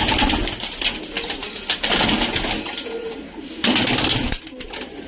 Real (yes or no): yes